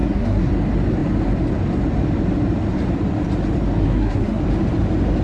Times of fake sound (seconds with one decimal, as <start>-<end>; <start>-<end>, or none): 0.0-0.5; 3.8-4.4